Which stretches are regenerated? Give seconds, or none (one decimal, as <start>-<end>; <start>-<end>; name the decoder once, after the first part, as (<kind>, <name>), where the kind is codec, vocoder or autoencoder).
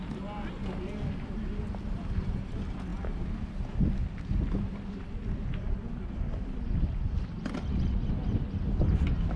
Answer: none